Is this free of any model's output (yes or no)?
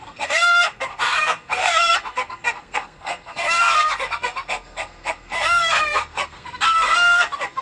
no